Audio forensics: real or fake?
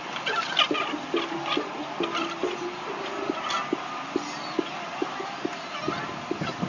real